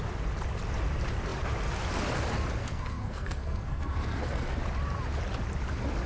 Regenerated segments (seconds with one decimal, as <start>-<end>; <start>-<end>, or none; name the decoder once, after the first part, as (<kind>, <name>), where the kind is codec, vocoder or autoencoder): 2.6-4.6 (codec, SNAC)